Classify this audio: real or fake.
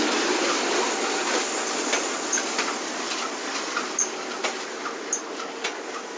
real